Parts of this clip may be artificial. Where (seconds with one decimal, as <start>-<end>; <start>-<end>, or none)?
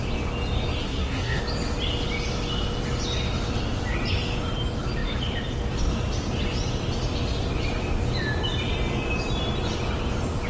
0.8-1.4